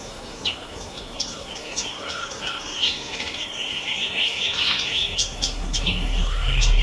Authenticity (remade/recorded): remade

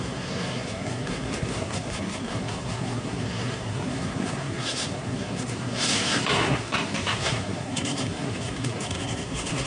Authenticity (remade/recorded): remade